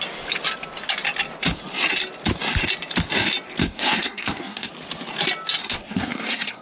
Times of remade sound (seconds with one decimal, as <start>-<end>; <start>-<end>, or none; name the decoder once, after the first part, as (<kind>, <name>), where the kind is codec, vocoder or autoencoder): 3.6-4.7 (codec, SNAC); 5.6-6.6

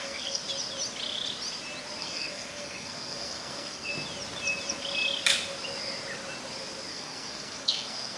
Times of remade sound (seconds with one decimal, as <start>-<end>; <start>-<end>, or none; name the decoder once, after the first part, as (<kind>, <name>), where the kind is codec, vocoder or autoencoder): 0.0-0.4 (codec, SNAC); 2.0-3.9; 6.9-8.2

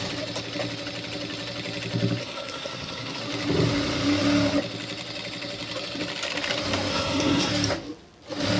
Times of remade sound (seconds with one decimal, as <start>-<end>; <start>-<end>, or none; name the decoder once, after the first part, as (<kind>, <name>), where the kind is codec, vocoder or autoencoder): 2.2-3.2 (codec, SNAC); 6.9-7.5

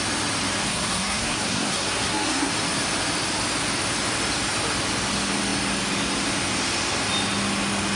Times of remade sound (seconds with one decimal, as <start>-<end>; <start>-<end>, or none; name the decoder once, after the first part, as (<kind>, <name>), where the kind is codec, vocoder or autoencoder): 0.7-2.5 (codec, SNAC)

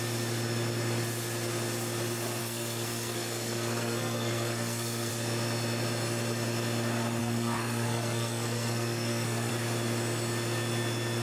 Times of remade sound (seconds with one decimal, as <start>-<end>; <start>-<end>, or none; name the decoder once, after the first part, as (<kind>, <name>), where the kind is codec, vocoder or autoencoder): 2.4-5.1 (codec, SNAC); 7.2-9.5

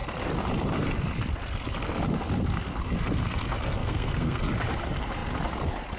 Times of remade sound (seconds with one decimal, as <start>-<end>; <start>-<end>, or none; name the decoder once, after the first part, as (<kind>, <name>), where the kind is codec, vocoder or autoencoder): 3.8-4.4 (codec, SNAC)

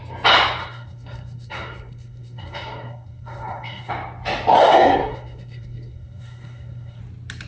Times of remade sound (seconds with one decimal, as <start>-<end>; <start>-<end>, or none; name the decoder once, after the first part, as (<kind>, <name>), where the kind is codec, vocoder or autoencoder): 0.6-3.9 (codec, SNAC); 4.6-7.0

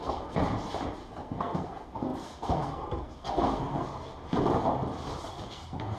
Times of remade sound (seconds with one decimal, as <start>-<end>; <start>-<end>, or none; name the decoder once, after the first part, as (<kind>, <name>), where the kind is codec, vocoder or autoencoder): 0.0-0.4 (codec, SNAC); 1.0-4.1; 5.3-6.0